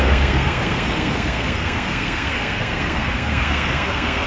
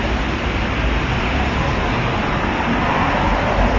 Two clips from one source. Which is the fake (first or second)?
first